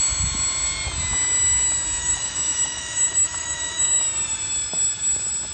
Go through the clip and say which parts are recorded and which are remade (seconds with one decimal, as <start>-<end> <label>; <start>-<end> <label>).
0.0-2.0 recorded; 2.0-4.0 remade; 4.0-5.5 recorded